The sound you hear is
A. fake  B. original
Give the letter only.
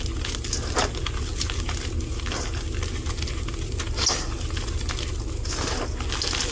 B